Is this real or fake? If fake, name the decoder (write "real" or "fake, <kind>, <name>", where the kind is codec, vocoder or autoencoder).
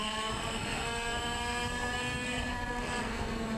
fake, codec, SNAC